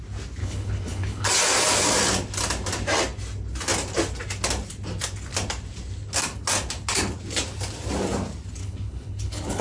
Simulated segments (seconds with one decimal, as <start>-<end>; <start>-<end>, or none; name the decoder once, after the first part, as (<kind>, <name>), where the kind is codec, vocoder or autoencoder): 0.4-1.3 (codec, HILCodec); 8.6-9.6